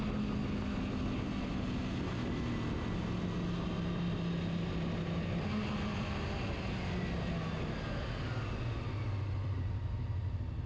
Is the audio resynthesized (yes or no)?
no